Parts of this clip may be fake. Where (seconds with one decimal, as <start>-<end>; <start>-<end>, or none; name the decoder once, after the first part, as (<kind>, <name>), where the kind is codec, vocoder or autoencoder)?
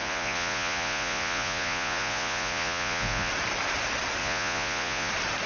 0.0-3.3 (vocoder, Vocos); 4.2-5.1